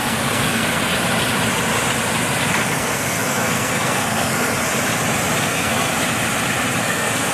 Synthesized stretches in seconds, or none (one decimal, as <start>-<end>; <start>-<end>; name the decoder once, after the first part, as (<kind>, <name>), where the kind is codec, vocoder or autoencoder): 0.0-0.9 (codec, SNAC); 2.5-4.5; 5.4-5.9; 6.8-7.3